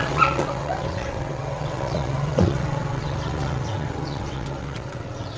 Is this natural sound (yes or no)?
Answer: no